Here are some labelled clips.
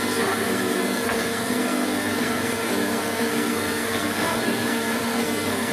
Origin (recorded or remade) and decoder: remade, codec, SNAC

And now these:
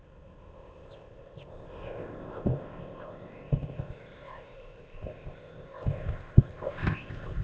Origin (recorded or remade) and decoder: remade, codec, ZipCodec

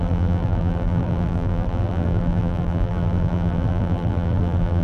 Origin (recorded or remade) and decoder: remade, vocoder, BigVGAN v2